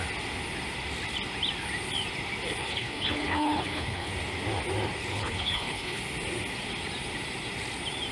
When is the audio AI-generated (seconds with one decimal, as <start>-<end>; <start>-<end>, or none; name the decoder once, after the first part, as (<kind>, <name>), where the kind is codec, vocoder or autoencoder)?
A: 2.6-4.1 (codec, HILCodec); 5.1-6.0